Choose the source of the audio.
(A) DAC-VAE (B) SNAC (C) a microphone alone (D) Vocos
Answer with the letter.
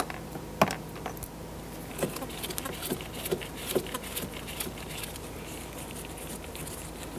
C